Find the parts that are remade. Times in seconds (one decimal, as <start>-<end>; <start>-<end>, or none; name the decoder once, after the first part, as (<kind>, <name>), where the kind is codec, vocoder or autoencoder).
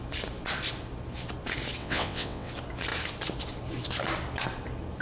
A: 1.8-2.5 (vocoder, WaveNeXt)